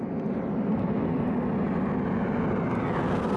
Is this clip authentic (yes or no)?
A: yes